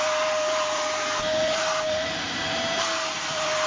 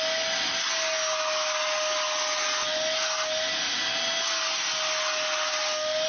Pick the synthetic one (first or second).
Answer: first